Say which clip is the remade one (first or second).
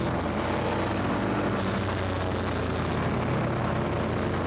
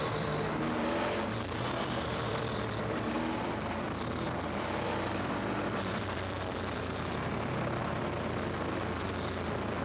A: second